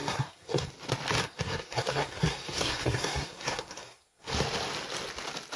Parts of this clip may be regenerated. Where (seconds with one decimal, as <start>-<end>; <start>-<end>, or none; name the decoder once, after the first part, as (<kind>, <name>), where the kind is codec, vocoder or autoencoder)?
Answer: 0.0-0.7 (codec, SNAC); 1.2-4.3